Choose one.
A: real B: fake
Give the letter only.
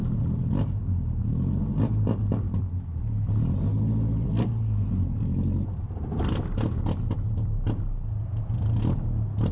A